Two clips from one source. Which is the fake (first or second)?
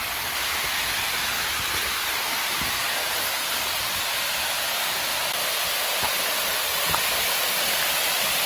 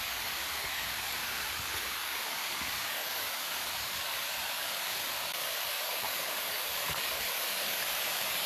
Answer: second